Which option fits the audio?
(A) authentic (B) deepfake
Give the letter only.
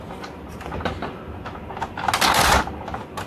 A